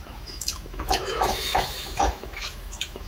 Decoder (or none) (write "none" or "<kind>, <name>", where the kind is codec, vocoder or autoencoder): autoencoder, DAC-VAE